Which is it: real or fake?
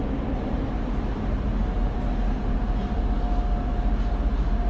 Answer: real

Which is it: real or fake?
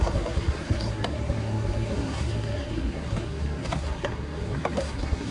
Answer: fake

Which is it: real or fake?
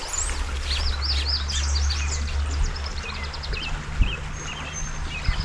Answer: real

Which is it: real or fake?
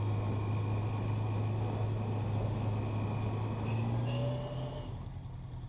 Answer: real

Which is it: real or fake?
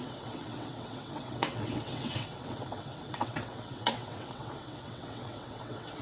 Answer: fake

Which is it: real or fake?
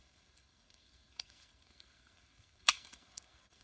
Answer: fake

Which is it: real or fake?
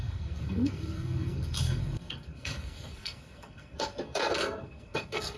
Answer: fake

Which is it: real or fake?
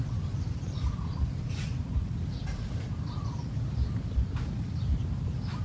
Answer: real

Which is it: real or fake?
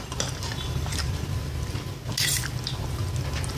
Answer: real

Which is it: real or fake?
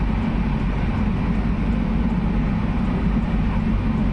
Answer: real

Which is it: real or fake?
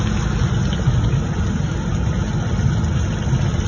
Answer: real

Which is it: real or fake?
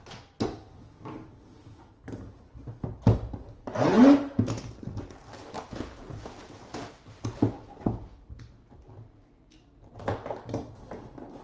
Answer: real